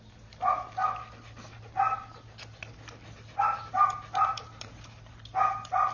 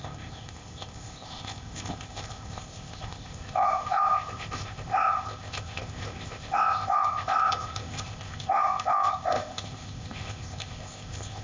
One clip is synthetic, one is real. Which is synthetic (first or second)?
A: second